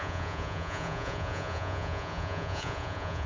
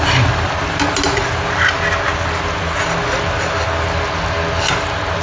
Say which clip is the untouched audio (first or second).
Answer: second